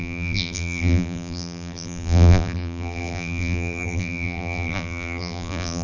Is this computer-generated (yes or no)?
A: yes